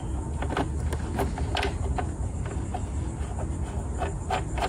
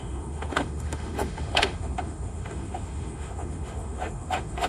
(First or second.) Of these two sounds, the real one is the first